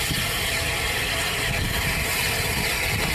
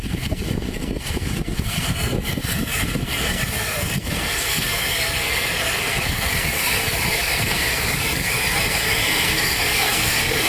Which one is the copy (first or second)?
second